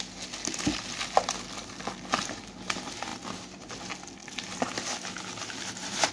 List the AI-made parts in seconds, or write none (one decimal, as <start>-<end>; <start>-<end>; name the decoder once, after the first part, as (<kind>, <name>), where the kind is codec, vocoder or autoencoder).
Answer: none